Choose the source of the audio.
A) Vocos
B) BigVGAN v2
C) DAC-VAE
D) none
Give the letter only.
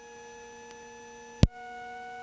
D